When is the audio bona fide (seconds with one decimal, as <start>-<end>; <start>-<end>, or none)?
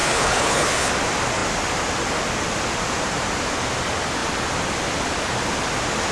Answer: 0.9-6.1